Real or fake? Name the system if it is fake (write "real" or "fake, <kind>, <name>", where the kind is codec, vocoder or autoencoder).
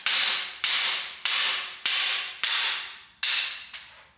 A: real